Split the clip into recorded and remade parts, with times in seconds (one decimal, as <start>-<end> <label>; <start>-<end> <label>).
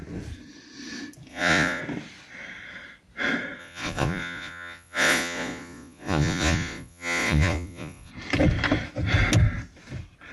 0.0-1.3 recorded; 1.3-1.8 remade; 1.8-3.6 recorded; 3.6-8.1 remade; 8.1-10.3 recorded